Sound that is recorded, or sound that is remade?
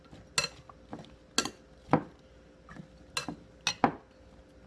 recorded